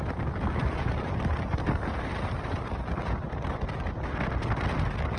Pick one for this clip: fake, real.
real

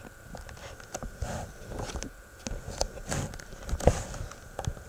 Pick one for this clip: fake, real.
real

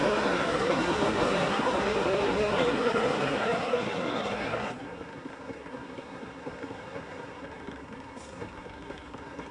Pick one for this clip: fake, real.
fake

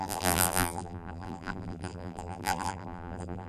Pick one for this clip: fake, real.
fake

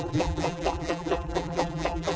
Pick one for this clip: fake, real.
fake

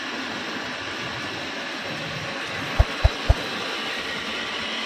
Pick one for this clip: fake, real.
real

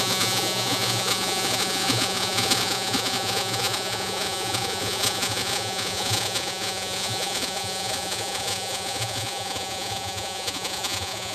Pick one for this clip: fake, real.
fake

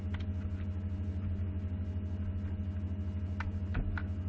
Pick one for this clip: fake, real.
real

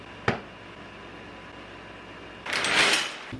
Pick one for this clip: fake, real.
real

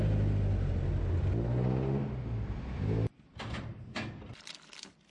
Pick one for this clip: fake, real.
real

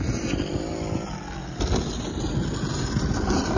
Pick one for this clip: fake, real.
real